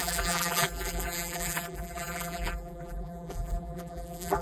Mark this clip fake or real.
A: fake